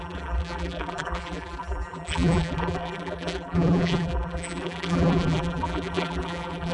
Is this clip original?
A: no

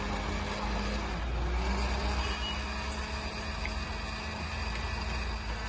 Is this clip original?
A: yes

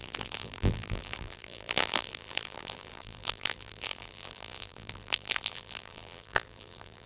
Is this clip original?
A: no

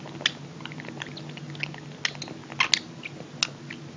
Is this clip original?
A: yes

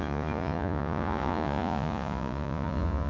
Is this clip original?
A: no